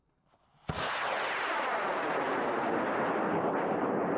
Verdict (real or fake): real